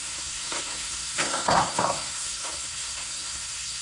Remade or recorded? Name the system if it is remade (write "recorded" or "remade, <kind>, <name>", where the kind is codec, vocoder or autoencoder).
remade, codec, SNAC